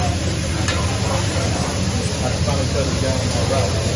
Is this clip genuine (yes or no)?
yes